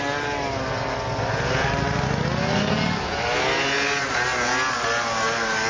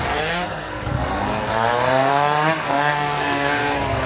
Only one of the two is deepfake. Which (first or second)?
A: second